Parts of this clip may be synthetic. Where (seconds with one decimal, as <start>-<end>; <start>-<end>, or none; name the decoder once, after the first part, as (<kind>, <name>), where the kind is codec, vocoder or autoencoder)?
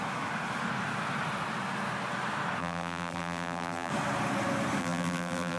2.6-3.9 (vocoder, BigVGAN v2); 4.8-5.6